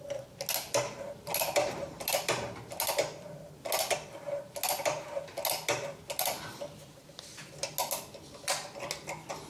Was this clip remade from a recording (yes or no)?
no